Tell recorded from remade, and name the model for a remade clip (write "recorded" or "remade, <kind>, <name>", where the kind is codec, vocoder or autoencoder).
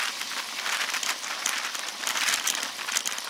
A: remade, vocoder, BigVGAN v2